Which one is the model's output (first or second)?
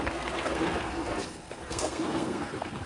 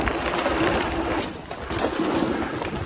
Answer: first